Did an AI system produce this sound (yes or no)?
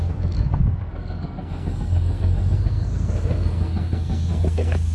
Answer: yes